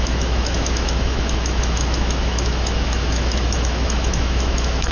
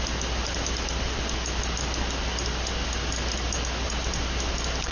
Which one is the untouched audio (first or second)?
second